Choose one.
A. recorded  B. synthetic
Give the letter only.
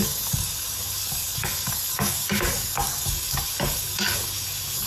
B